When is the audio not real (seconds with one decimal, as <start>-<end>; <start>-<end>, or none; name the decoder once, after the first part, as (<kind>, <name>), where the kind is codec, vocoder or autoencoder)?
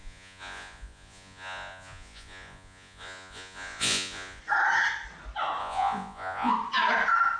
0.0-4.4 (vocoder, Vocos); 5.6-6.5